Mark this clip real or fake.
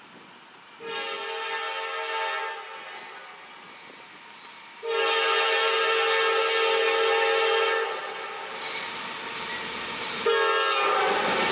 real